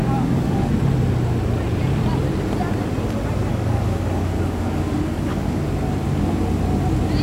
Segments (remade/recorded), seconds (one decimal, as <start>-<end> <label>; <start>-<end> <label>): 0.0-0.7 remade; 0.7-3.5 recorded; 3.5-5.6 remade; 5.6-7.2 recorded